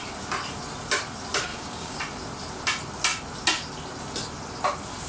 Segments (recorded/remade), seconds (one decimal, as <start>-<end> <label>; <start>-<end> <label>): 0.0-1.5 recorded; 1.5-2.0 remade; 2.0-5.1 recorded